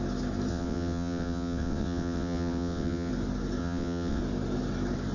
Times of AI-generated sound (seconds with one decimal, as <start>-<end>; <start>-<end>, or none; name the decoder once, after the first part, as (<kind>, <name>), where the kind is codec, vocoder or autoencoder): 0.5-3.1 (vocoder, WaveNeXt); 3.6-4.2